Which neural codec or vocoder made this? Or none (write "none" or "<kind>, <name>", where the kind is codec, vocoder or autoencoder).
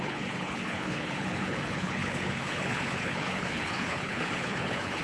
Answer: codec, HILCodec